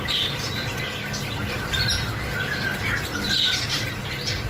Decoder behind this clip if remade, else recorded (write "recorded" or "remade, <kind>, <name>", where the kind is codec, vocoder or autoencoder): recorded